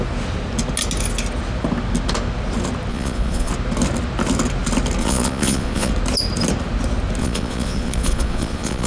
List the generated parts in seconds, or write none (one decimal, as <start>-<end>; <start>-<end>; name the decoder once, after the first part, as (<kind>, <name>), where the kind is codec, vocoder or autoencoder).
2.9-3.5 (vocoder, Vocos); 5.0-5.9; 7.2-8.9